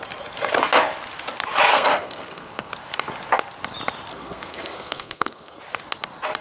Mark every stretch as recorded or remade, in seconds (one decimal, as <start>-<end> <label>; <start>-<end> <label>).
0.0-1.7 recorded; 1.7-2.7 remade; 2.7-4.1 recorded; 4.1-5.6 remade; 5.6-6.4 recorded